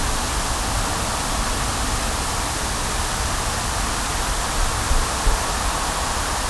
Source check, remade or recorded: recorded